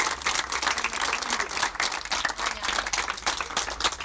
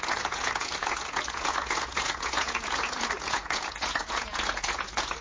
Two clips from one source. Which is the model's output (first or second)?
second